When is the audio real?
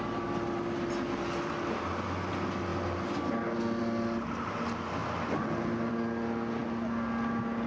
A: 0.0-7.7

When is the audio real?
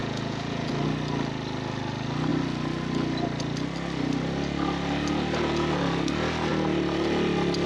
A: 0.7-7.7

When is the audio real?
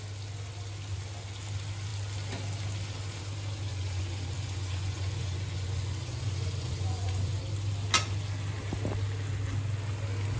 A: 0.0-3.7; 7.4-10.4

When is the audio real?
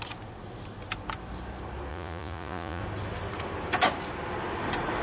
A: 0.0-1.9; 2.8-5.0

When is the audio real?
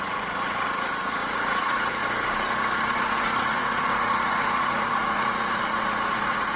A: 2.0-3.0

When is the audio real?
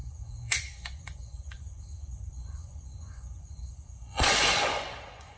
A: none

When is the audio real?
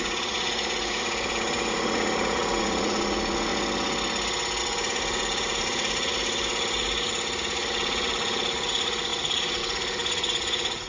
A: 3.5-4.6